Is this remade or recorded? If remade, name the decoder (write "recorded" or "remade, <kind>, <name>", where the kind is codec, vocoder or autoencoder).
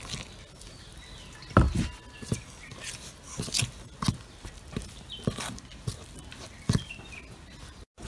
recorded